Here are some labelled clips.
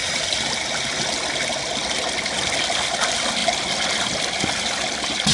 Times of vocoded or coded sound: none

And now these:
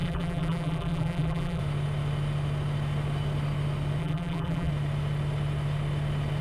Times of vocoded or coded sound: 0.0-1.6 (vocoder, BigVGAN v2); 4.0-4.7

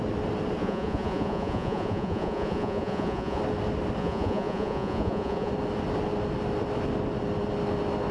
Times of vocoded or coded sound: 0.6-3.4 (vocoder, Vocos); 4.0-5.5

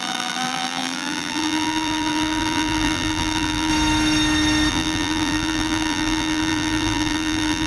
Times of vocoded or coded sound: 0.0-3.7 (vocoder, BigVGAN v2); 4.7-7.7

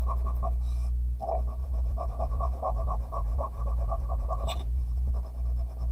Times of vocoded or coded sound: 1.6-5.1 (vocoder, Vocos)

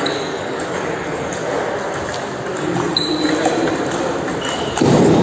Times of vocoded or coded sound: 0.0-1.4 (codec, DAC); 4.5-5.2

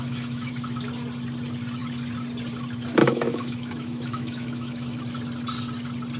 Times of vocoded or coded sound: 0.0-0.5 (autoencoder, DAC-VAE); 3.0-5.0